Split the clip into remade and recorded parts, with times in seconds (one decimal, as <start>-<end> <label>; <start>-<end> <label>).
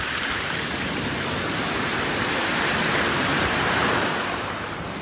0.0-1.9 remade; 1.9-3.2 recorded; 3.2-5.0 remade